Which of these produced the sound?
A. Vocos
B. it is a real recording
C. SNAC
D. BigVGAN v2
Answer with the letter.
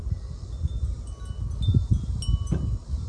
B